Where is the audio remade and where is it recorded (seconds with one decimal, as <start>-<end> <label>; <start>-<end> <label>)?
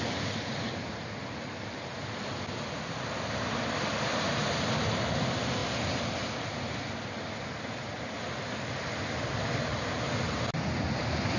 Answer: 0.0-11.4 recorded